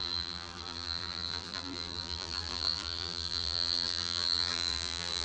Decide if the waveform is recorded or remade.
remade